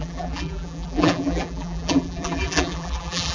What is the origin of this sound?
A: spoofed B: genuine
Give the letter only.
A